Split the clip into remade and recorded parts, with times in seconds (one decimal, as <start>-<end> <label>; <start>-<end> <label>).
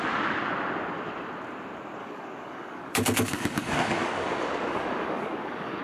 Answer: 0.0-2.0 recorded; 2.0-5.8 remade